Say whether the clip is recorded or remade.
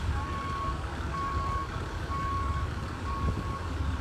remade